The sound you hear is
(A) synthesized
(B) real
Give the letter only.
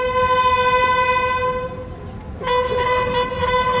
B